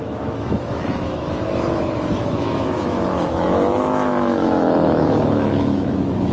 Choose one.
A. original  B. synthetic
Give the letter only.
B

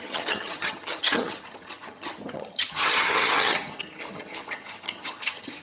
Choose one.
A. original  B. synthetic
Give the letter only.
B